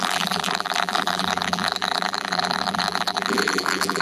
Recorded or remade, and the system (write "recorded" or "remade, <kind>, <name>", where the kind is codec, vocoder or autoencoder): remade, vocoder, BigVGAN v2